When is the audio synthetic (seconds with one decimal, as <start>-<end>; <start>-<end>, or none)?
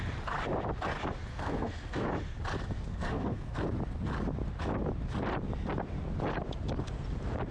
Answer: 1.3-2.1; 2.9-3.6